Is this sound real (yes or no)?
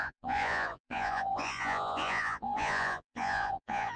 no